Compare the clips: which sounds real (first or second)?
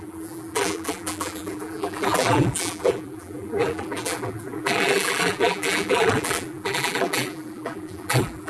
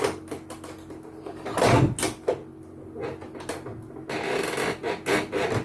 second